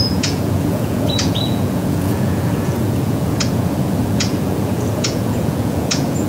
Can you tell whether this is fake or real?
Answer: fake